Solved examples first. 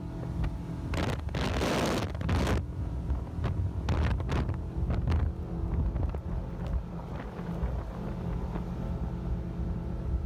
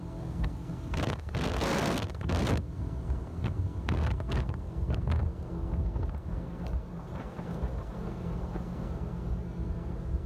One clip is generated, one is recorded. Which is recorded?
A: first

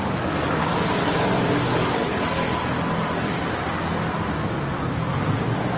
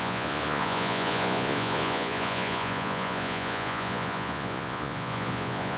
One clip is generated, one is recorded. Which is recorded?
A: first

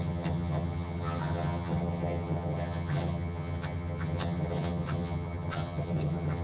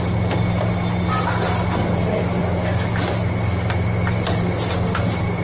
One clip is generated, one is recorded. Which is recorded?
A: second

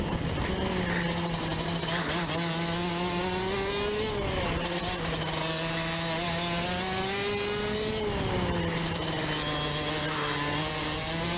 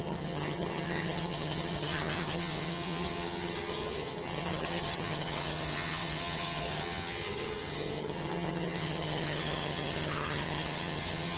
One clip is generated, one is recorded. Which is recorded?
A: first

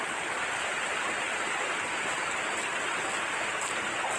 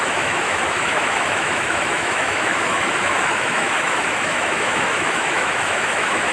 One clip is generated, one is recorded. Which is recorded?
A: first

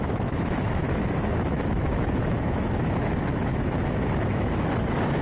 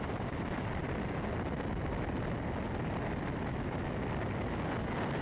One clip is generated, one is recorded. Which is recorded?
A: second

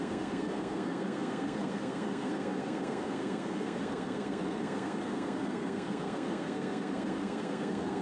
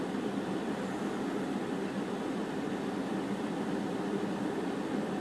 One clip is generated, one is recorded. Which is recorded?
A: second